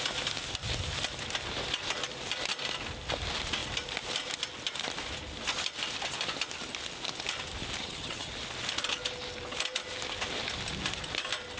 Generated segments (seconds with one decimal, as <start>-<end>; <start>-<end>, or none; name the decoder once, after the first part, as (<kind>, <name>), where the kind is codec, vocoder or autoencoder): 7.8-8.3 (vocoder, HiFi-GAN)